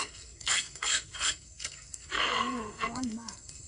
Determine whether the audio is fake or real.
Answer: fake